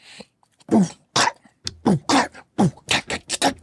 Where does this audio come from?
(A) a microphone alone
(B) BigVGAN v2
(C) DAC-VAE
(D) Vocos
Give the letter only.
A